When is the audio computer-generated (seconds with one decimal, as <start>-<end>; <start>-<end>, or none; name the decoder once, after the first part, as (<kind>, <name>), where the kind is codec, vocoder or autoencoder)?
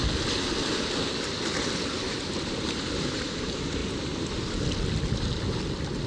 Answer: 1.9-3.8 (vocoder, BigVGAN v2)